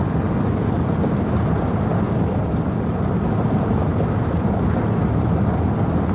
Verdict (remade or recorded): recorded